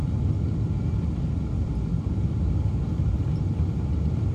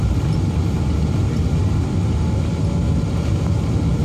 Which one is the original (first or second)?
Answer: second